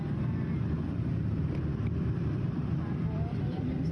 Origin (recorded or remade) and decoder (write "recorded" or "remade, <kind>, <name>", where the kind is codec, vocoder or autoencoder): remade, vocoder, BigVGAN v2